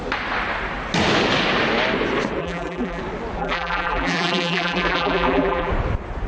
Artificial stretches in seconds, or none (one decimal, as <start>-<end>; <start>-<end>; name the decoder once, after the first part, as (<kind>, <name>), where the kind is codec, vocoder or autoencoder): 2.4-3.0 (vocoder, BigVGAN v2); 3.4-5.7